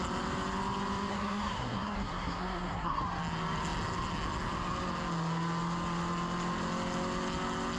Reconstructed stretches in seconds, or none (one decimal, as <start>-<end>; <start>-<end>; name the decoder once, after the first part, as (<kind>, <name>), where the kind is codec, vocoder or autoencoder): 1.1-3.0 (codec, SNAC)